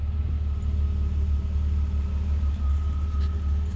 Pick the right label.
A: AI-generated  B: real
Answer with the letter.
B